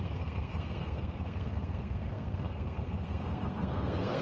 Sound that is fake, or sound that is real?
fake